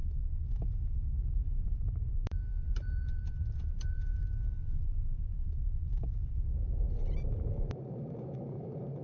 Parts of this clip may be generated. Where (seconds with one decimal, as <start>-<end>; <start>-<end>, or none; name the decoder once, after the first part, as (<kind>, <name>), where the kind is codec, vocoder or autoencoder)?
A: 1.2-9.0 (vocoder, BigVGAN v2)